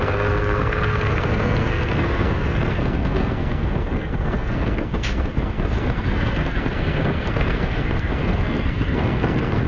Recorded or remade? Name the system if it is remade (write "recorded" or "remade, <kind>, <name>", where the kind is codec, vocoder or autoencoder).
remade, codec, SNAC